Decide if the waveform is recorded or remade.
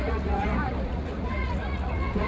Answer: remade